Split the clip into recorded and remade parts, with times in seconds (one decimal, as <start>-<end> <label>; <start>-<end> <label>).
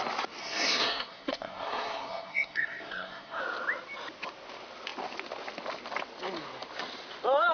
0.0-0.4 recorded; 0.4-3.4 remade; 3.4-7.5 recorded